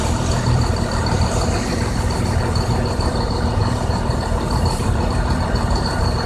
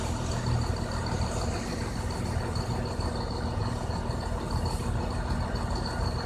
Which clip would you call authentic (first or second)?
second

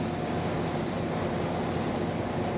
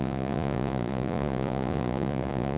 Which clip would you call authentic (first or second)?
first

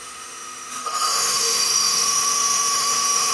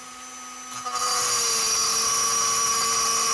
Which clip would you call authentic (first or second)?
second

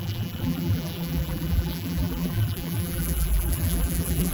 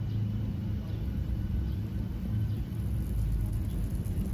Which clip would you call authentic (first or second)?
second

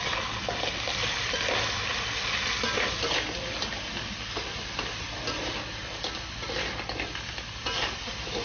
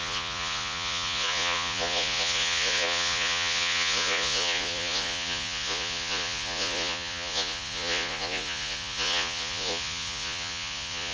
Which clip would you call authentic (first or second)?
first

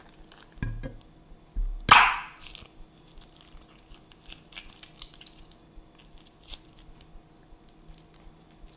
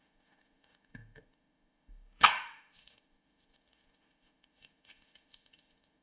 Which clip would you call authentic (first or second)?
first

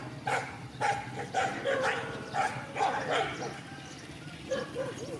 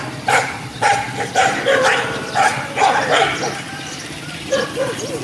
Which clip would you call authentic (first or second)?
first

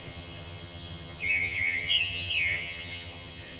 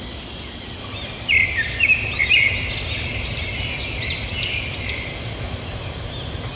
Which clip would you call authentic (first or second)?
second